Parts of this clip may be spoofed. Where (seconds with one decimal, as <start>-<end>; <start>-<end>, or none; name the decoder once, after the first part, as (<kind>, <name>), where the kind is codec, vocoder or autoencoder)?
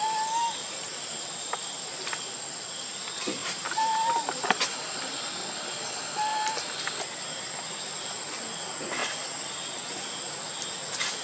3.4-4.1 (vocoder, BigVGAN v2); 6.3-7.8